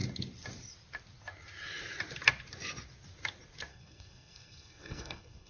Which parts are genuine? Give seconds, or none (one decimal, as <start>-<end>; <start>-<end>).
0.0-3.7